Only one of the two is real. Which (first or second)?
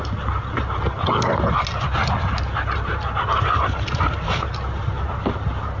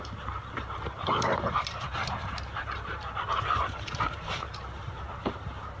first